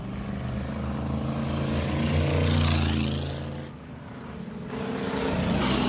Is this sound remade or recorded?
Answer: recorded